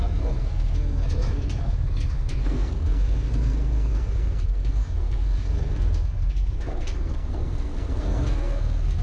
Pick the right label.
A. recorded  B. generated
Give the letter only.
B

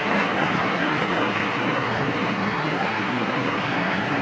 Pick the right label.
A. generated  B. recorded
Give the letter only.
A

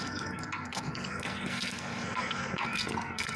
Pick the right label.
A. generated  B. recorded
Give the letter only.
A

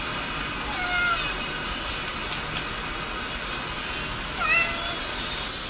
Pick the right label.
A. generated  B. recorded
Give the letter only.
B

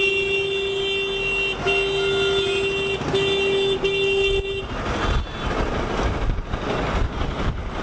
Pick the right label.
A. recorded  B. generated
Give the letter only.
A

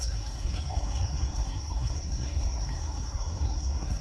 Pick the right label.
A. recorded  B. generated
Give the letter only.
B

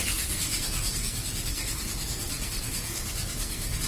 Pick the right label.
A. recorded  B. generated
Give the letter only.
B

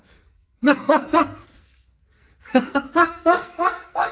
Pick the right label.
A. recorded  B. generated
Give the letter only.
B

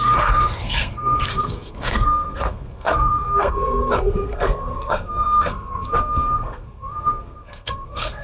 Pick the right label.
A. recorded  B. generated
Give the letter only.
B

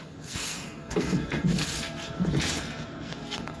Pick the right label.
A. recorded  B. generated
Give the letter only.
B